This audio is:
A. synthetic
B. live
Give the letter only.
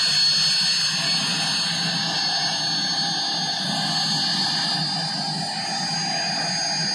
B